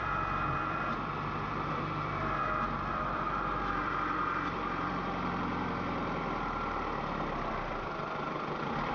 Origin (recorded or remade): remade